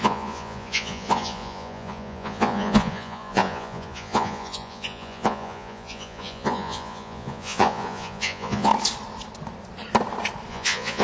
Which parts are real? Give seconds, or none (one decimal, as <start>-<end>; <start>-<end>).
8.7-10.5